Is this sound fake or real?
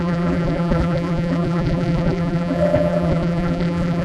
fake